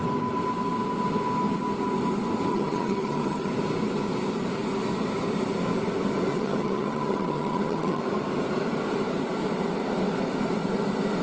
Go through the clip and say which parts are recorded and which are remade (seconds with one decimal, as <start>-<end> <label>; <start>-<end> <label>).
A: 0.0-2.5 recorded; 2.5-3.5 remade; 3.5-6.3 recorded; 6.3-8.0 remade; 8.0-11.2 recorded